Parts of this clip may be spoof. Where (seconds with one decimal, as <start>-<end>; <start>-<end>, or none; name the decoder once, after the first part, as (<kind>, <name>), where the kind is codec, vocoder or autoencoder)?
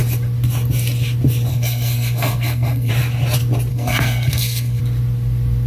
1.5-2.9 (codec, SNAC); 3.7-4.8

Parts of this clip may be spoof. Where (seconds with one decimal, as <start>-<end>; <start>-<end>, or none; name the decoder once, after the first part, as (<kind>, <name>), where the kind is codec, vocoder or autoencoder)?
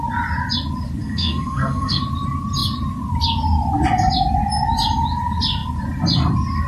1.0-2.0 (codec, SNAC)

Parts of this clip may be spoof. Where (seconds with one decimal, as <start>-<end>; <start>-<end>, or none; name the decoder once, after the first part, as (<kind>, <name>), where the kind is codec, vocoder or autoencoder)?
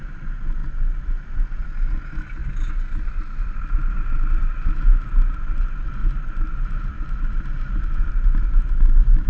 6.0-8.1 (vocoder, BigVGAN v2)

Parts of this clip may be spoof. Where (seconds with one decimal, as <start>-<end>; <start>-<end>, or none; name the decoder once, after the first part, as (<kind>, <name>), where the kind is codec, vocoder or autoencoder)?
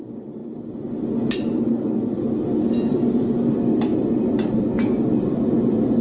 none